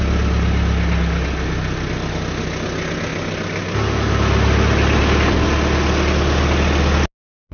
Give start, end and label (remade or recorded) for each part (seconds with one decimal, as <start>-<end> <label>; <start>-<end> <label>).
0.0-7.5 recorded